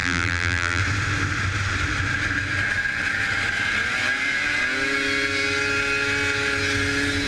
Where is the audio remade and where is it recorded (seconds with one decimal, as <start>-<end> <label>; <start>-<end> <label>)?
0.0-0.8 remade; 0.8-7.3 recorded